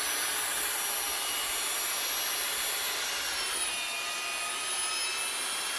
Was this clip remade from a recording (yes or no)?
no